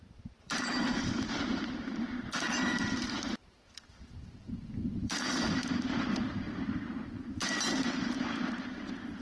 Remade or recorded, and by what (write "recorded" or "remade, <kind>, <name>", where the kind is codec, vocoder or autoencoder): remade, vocoder, BigVGAN v2